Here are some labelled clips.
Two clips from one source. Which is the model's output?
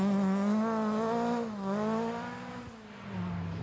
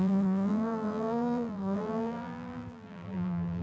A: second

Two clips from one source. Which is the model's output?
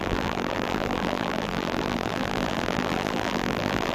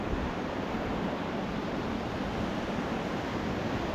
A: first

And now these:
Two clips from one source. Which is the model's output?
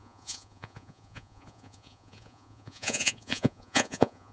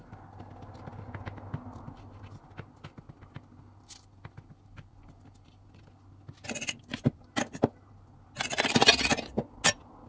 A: first